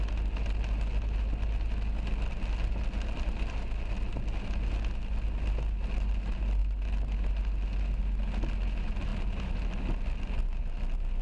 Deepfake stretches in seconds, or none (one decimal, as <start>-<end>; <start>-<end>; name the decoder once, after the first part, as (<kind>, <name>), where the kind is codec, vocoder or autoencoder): none